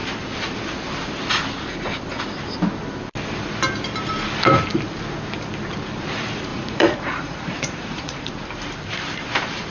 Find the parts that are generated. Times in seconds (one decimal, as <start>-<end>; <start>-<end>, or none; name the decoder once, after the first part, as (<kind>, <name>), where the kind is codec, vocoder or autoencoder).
6.5-8.3 (vocoder, Vocos)